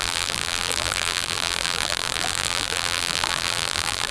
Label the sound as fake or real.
fake